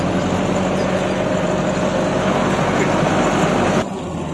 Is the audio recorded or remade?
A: recorded